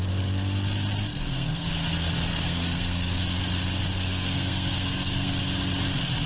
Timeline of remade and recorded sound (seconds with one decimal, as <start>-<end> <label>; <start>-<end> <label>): 0.0-1.1 recorded; 1.1-1.7 remade; 1.7-2.3 recorded; 2.3-3.2 remade; 3.2-3.9 recorded; 3.9-5.3 remade; 5.3-6.3 recorded